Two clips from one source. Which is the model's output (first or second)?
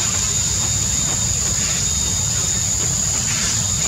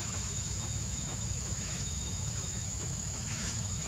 second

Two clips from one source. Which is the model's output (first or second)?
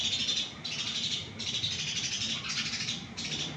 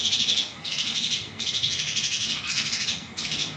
second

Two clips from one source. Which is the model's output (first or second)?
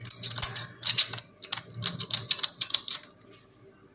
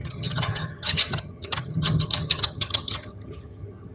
second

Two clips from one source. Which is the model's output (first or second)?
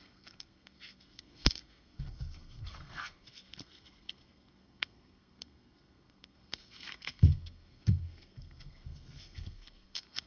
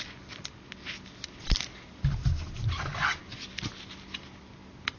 first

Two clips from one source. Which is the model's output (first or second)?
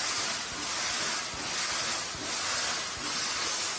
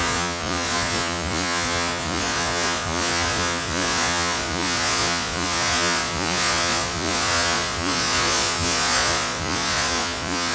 second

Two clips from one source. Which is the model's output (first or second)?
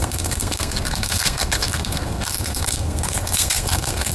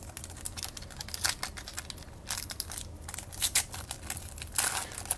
first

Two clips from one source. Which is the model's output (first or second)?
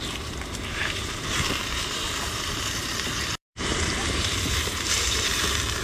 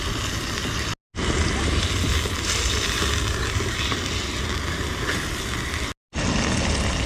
first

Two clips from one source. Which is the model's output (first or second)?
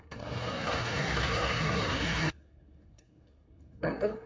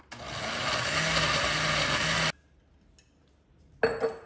first